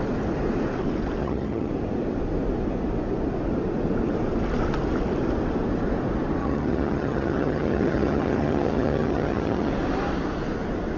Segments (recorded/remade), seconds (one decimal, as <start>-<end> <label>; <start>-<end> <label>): 0.0-1.2 recorded; 1.2-1.7 remade; 1.7-6.4 recorded; 6.4-9.7 remade; 9.7-11.0 recorded